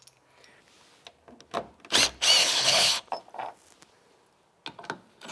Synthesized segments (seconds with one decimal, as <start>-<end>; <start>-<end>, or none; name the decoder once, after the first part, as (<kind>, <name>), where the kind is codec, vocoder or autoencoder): 2.4-3.1 (codec, HILCodec)